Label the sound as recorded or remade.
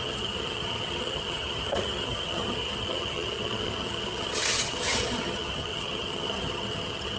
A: remade